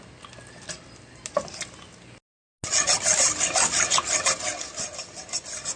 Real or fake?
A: real